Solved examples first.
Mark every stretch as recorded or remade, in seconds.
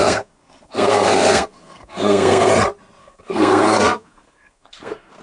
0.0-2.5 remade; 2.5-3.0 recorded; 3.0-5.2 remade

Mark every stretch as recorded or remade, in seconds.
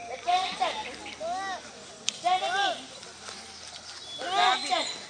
0.0-5.1 recorded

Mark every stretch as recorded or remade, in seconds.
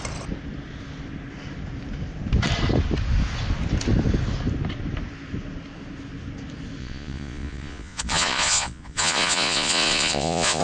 0.0-6.8 recorded; 6.8-10.6 remade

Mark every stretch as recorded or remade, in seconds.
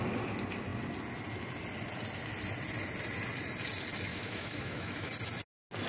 0.0-4.1 recorded; 4.1-5.1 remade; 5.1-5.9 recorded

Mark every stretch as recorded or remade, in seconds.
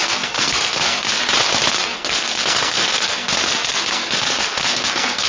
0.0-1.2 remade; 1.2-1.7 recorded; 1.7-5.3 remade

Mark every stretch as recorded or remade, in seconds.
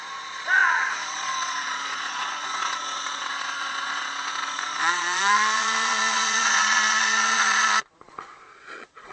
0.0-9.1 remade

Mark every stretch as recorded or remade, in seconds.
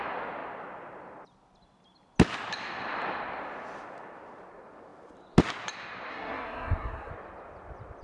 0.0-6.1 recorded; 6.1-7.1 remade; 7.1-8.0 recorded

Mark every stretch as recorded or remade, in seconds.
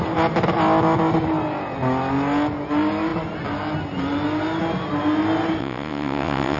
0.0-5.6 recorded; 5.6-6.6 remade